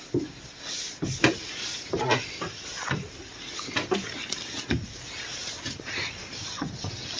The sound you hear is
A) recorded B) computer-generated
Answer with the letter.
A